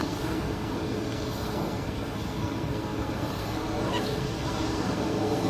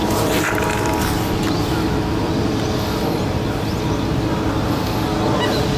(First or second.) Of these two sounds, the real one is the second